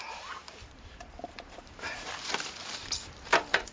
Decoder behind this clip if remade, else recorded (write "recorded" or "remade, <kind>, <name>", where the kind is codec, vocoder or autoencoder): remade, vocoder, BigVGAN v2